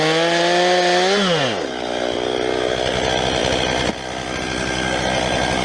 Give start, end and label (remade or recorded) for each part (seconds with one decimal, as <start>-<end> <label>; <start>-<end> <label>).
0.0-5.6 recorded